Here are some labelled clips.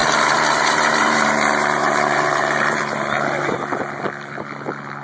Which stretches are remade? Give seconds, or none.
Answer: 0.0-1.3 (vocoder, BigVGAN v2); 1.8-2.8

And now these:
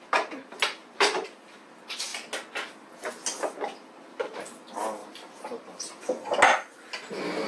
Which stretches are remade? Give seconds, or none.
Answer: 0.8-1.4 (vocoder, BigVGAN v2); 5.0-6.0

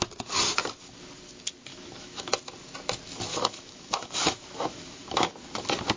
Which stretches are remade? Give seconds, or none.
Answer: 1.7-2.4 (autoencoder, DAC-VAE); 3.3-5.3